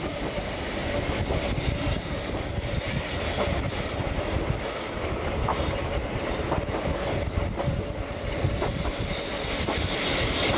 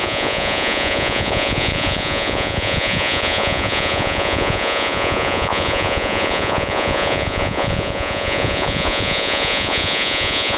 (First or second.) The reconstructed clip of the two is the second